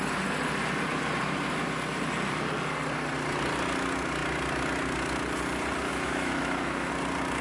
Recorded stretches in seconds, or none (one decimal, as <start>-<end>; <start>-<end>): 0.0-5.9; 6.9-7.4